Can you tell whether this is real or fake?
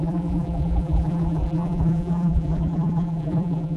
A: fake